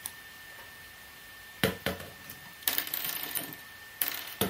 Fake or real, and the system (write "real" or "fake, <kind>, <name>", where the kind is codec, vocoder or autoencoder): fake, vocoder, BigVGAN v2